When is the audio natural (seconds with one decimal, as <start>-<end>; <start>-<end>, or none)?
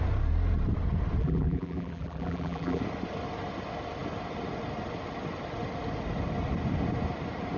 0.0-1.2; 2.8-7.6